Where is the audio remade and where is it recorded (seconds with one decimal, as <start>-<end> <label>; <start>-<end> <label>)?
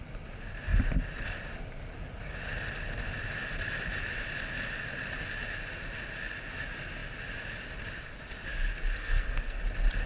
0.0-9.0 recorded; 9.0-9.6 remade; 9.6-10.1 recorded